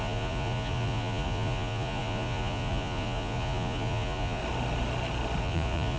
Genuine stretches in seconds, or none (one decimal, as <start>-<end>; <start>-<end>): 4.4-5.4